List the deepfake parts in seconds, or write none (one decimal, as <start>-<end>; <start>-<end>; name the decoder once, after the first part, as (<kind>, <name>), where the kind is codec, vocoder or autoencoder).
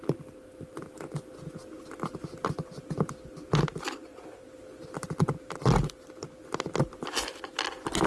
none